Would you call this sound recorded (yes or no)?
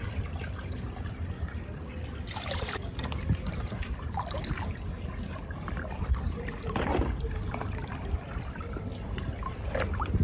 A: no